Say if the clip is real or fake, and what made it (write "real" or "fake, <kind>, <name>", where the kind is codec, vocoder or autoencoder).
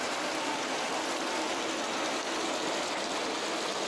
real